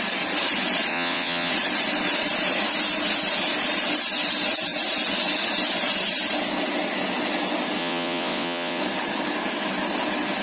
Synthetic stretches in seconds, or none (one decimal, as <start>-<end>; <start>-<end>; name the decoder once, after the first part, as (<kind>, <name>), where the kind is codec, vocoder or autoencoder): 0.9-1.5 (vocoder, WaveNeXt); 7.8-8.8